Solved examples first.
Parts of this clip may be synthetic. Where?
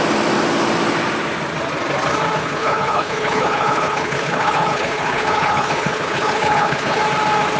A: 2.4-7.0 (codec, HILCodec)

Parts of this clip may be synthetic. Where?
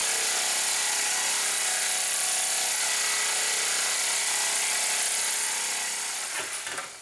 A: none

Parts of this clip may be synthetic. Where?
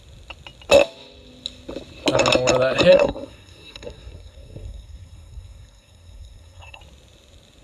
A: 2.9-6.8 (codec, SNAC)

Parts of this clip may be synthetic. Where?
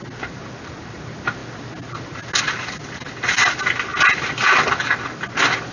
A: none